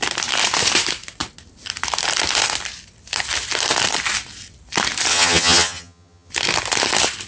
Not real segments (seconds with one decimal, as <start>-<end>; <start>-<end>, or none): 5.1-6.3